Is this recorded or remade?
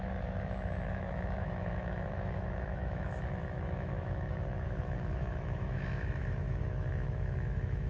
remade